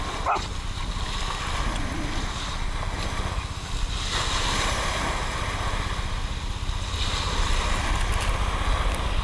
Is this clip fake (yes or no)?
no